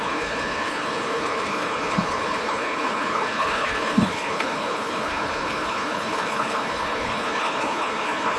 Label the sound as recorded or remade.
remade